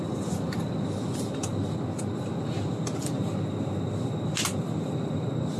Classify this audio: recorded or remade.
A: recorded